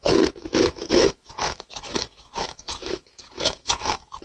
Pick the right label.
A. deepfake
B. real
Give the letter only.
A